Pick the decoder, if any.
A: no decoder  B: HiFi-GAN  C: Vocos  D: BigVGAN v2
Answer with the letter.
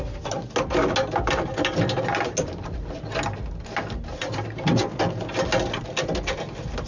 A